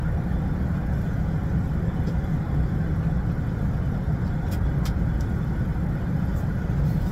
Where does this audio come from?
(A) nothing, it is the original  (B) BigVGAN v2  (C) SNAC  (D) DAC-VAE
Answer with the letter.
A